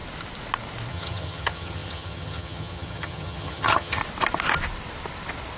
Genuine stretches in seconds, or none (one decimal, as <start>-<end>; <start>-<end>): 0.0-0.9; 4.0-5.6